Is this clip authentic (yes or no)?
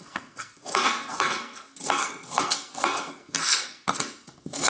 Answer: no